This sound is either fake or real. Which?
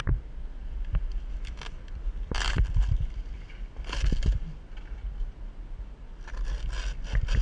real